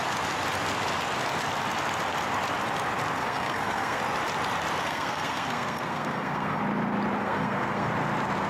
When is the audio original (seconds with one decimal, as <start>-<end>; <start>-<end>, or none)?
0.0-3.2; 4.0-4.8; 6.6-7.2; 7.9-8.5